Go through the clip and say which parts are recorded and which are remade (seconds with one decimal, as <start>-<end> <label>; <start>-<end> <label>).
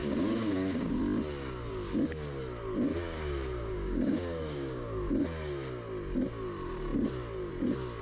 0.0-1.0 remade; 1.0-2.9 recorded; 2.9-5.1 remade; 5.1-8.0 recorded